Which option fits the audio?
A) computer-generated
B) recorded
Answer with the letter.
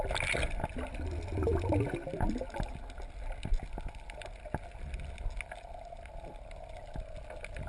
B